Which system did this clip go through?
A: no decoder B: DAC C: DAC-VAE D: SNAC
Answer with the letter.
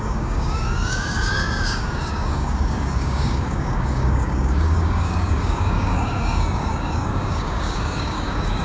B